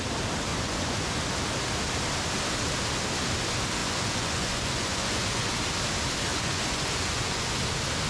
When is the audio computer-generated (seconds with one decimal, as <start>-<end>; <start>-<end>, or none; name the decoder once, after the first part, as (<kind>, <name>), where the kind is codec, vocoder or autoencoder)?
0.5-1.2 (vocoder, Vocos); 3.8-5.6; 6.3-7.6